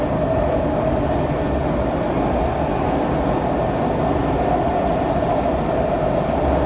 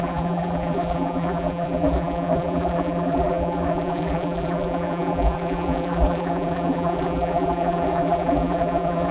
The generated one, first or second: second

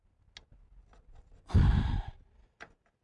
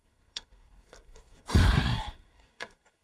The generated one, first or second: second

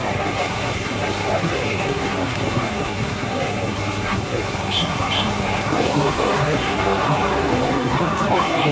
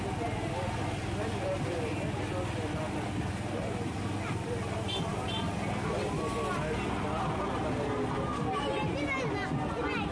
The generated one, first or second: first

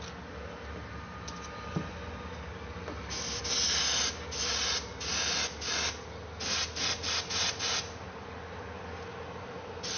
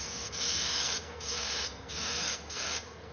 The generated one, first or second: second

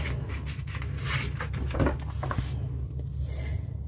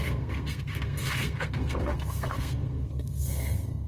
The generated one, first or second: second